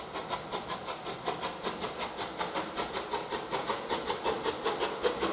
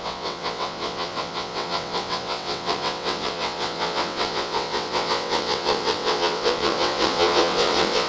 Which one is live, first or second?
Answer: first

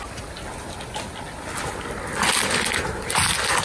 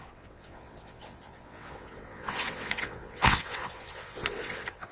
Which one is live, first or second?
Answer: first